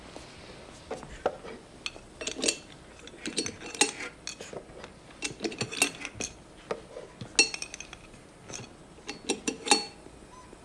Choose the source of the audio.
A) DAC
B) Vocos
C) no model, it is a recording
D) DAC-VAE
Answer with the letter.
C